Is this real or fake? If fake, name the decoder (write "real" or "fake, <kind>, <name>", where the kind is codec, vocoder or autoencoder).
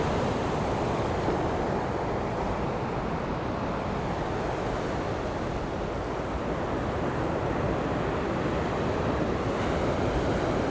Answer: real